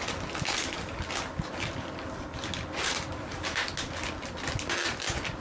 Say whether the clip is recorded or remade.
recorded